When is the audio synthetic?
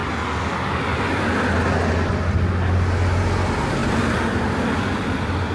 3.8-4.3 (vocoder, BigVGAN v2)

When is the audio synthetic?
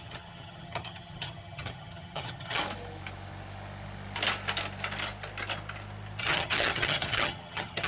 0.0-2.6 (vocoder, HiFi-GAN); 6.2-7.9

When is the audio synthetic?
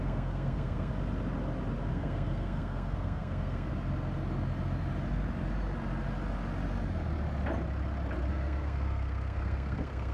0.0-0.9 (codec, SNAC); 1.9-3.7; 8.3-10.1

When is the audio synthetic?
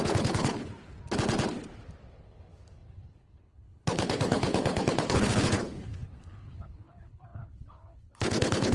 0.0-0.7 (codec, HILCodec); 2.1-8.7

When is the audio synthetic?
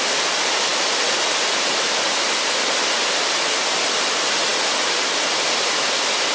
none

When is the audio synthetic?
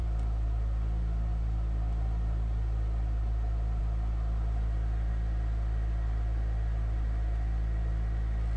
none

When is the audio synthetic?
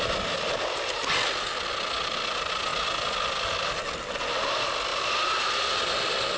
none